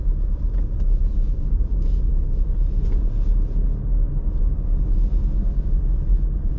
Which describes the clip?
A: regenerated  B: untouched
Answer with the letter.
B